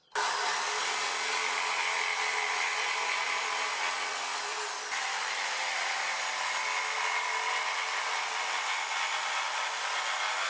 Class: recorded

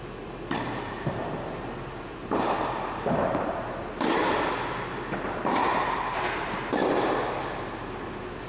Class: recorded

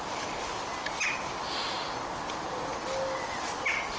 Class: recorded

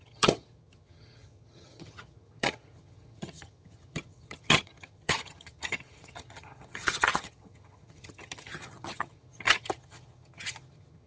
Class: remade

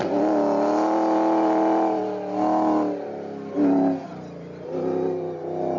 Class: recorded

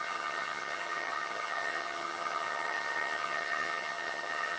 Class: remade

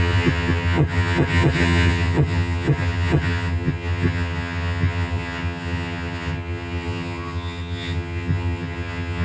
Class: remade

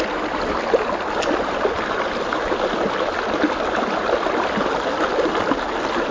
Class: recorded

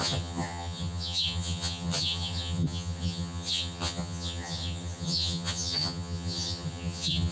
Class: remade